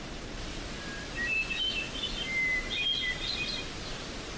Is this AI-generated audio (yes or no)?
no